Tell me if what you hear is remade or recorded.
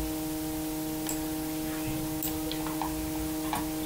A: recorded